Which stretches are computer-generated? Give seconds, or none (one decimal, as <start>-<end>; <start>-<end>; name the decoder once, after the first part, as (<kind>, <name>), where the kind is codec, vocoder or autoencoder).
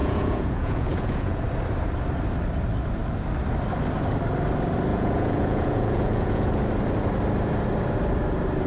0.0-1.4 (vocoder, Vocos); 4.9-6.5